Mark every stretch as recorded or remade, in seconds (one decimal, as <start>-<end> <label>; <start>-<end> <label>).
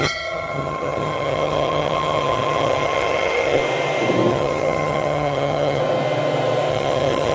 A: 0.0-3.6 remade; 3.6-4.3 recorded; 4.3-5.8 remade; 5.8-6.7 recorded; 6.7-7.3 remade